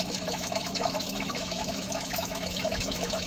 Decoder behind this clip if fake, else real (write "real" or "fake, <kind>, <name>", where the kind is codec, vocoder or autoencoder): fake, autoencoder, DAC-VAE